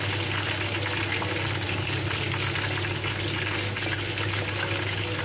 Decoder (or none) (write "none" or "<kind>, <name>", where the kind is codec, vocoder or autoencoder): none